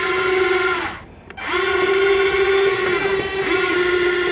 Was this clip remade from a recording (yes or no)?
no